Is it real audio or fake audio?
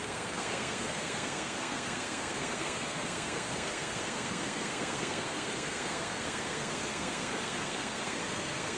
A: fake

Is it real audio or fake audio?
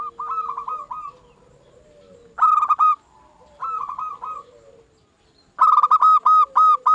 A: real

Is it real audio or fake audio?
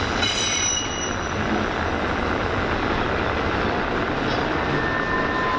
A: real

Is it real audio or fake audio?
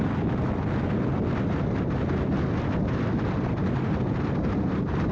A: real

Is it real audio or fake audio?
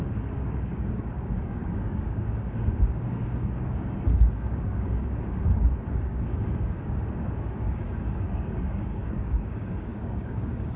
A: fake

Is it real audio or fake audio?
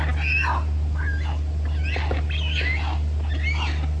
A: real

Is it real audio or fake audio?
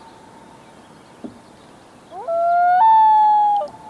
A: real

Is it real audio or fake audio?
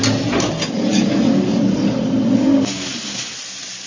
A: real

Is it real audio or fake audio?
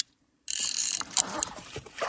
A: fake